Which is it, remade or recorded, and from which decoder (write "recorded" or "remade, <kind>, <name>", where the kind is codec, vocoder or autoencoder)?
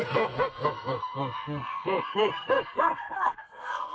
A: remade, codec, SNAC